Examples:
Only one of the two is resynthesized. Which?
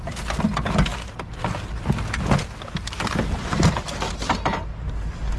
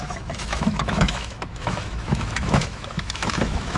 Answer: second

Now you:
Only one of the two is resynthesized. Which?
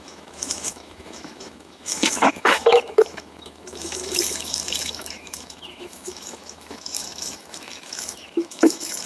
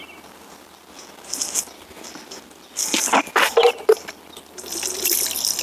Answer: first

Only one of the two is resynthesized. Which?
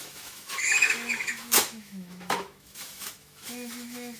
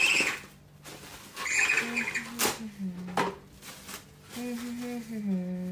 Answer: first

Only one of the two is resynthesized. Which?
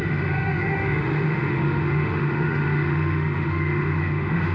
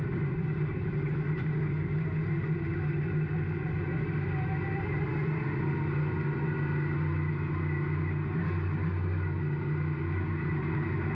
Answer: first